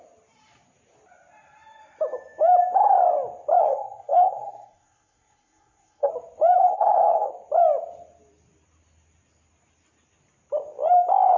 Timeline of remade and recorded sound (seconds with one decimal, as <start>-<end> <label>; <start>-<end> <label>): 0.0-3.6 recorded; 3.6-6.1 remade; 6.1-6.6 recorded; 6.6-7.3 remade; 7.3-11.4 recorded